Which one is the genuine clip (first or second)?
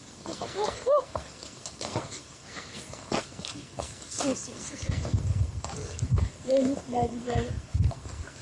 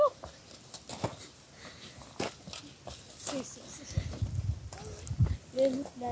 second